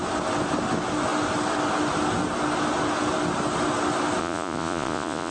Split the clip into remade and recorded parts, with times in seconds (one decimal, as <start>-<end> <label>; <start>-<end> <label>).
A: 0.0-4.2 recorded; 4.2-5.3 remade